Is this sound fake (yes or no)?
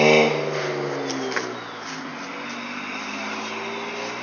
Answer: no